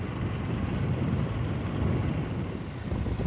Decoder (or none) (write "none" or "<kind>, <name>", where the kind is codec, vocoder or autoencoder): none